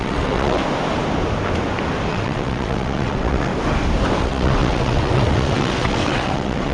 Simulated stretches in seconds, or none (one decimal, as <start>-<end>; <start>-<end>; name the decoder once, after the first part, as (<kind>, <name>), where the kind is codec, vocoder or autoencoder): 0.0-0.6 (vocoder, WaveNeXt); 2.1-3.5; 4.2-6.7